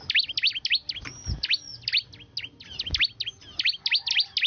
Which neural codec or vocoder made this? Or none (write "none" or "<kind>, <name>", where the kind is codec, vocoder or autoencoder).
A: none